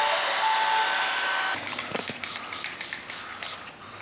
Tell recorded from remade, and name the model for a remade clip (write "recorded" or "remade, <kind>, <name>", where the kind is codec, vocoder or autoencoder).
recorded